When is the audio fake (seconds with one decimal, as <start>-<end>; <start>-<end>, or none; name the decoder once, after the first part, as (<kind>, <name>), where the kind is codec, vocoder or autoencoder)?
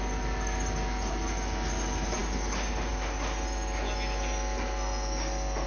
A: none